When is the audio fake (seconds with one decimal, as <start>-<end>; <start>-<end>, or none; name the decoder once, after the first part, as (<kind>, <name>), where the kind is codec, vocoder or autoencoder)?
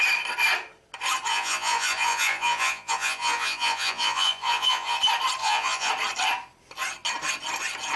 1.3-5.0 (vocoder, Vocos); 5.4-5.9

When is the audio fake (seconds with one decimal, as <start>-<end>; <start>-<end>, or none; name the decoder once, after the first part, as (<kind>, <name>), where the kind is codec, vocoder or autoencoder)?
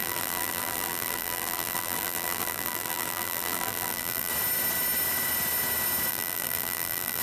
0.0-4.3 (vocoder, BigVGAN v2); 6.1-7.2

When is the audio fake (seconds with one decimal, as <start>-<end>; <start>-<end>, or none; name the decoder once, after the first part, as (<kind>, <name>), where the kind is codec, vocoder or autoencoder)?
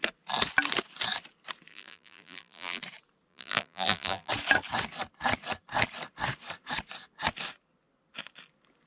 1.7-2.8 (vocoder, BigVGAN v2); 3.3-4.3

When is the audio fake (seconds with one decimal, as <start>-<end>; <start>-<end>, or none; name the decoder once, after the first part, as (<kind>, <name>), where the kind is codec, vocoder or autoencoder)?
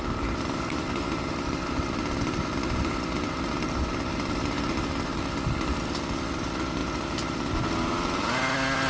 none